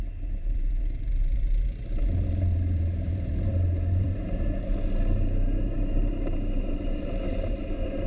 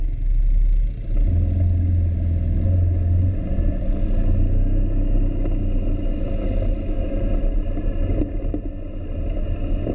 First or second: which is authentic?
second